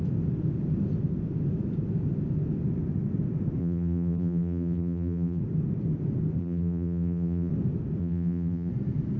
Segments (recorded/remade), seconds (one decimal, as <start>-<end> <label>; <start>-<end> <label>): 0.0-3.6 recorded; 3.6-5.4 remade; 5.4-6.4 recorded; 6.4-7.5 remade; 7.5-8.0 recorded; 8.0-8.7 remade; 8.7-9.2 recorded